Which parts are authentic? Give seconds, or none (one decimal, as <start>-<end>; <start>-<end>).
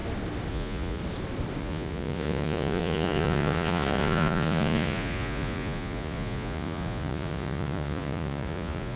0.0-0.5; 1.0-1.6